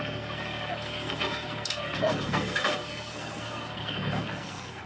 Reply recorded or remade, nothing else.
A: remade